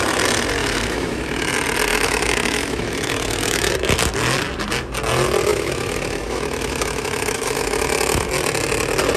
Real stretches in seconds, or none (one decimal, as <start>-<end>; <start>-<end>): 0.0-0.6; 1.5-1.9; 3.7-5.5; 8.3-9.2